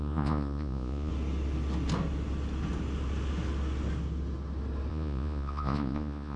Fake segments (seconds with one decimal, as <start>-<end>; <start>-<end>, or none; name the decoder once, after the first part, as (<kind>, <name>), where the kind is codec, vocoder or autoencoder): 0.0-1.1 (vocoder, Vocos); 4.9-6.4